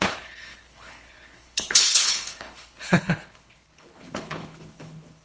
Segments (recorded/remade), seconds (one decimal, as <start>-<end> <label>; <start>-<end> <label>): 0.0-5.2 remade